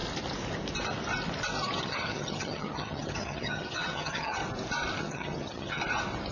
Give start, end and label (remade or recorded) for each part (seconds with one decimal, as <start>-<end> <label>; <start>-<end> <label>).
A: 0.0-1.8 recorded; 1.8-4.4 remade; 4.4-5.0 recorded; 5.0-5.8 remade; 5.8-6.3 recorded

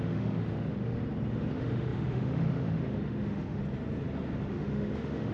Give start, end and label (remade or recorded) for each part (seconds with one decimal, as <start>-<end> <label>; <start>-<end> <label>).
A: 0.0-1.0 remade; 1.0-1.5 recorded; 1.5-3.6 remade; 3.6-4.5 recorded; 4.5-5.3 remade

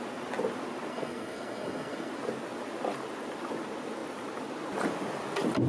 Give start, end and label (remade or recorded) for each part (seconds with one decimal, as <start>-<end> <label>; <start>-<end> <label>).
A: 0.0-0.9 recorded; 0.9-2.1 remade; 2.1-5.7 recorded

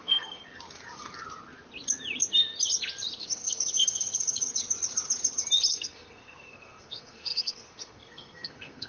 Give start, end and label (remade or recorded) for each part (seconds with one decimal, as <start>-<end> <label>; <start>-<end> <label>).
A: 0.0-0.4 remade; 0.4-3.2 recorded; 3.2-4.6 remade; 4.6-5.7 recorded; 5.7-8.9 remade

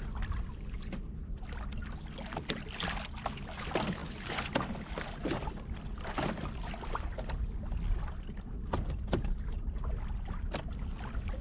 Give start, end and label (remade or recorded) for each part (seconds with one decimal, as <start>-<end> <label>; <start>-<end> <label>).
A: 0.0-11.4 recorded

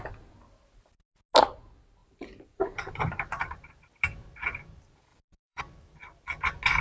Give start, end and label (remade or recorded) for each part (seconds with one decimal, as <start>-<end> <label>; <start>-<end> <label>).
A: 0.0-2.0 recorded; 2.0-3.7 remade; 3.7-5.1 recorded; 5.1-5.6 remade; 5.6-6.8 recorded

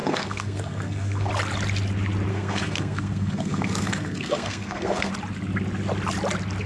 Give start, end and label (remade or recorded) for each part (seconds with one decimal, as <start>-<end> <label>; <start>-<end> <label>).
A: 0.0-1.3 remade; 1.3-2.3 recorded; 2.3-5.1 remade; 5.1-6.7 recorded